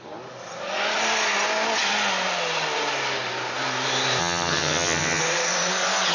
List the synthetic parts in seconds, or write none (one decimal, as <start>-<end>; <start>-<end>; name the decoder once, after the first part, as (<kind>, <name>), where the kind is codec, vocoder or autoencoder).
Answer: 4.2-5.2 (vocoder, HiFi-GAN)